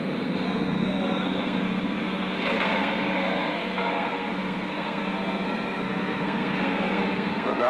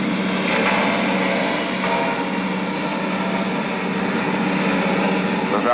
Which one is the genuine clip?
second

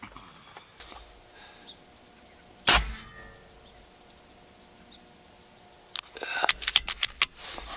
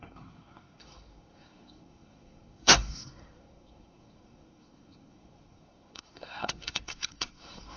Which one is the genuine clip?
first